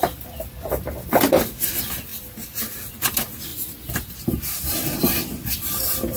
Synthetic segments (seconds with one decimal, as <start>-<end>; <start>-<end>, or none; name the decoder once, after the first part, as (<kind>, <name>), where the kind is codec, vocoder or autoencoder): none